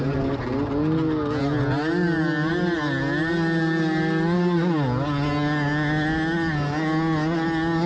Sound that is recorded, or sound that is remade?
recorded